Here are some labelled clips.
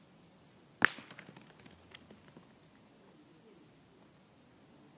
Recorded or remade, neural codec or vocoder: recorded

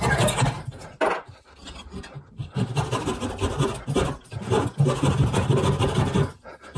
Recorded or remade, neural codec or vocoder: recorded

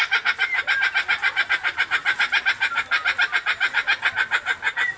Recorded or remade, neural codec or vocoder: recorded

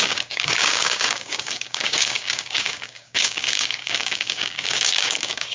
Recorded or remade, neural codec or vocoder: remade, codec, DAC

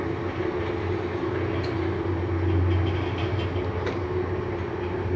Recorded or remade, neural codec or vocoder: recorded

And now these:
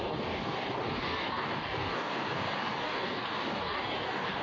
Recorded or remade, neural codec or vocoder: remade, codec, DAC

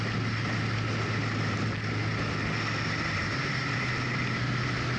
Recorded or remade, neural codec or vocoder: recorded